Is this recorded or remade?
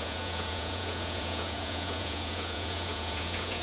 remade